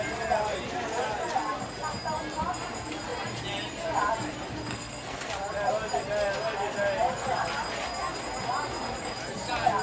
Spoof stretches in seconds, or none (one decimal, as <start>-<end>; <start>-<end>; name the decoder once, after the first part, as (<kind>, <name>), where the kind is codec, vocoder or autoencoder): 4.7-5.3 (codec, SNAC)